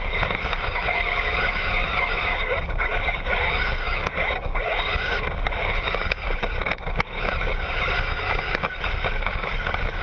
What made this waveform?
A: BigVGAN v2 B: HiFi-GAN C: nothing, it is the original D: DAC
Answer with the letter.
D